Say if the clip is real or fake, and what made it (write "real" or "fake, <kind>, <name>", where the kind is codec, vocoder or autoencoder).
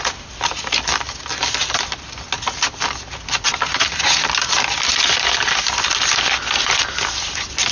real